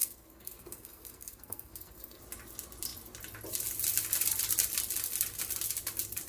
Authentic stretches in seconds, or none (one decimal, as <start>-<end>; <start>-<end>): 2.2-6.3